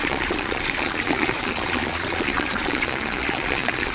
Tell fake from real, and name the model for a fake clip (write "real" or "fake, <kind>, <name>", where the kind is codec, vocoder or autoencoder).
fake, vocoder, Vocos